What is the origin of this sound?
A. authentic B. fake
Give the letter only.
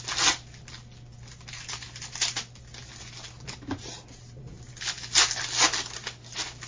A